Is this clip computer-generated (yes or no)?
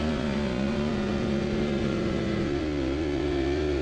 yes